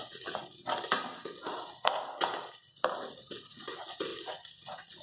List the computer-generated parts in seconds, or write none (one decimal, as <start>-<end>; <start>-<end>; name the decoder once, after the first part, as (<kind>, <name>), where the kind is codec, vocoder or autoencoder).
0.0-0.4 (vocoder, Vocos); 3.4-5.0